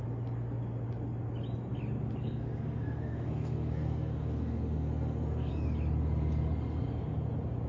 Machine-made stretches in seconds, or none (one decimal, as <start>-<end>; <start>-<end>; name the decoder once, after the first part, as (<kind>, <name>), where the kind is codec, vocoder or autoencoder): 2.2-5.5 (codec, SNAC)